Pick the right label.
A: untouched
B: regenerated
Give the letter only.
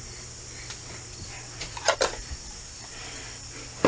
A